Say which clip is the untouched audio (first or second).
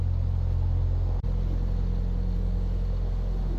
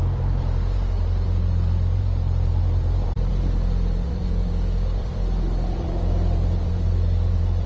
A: first